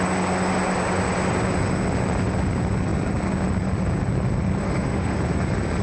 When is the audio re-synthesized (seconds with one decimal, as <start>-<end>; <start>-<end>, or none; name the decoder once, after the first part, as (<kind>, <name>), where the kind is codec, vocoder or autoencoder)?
4.6-5.2 (autoencoder, DAC-VAE)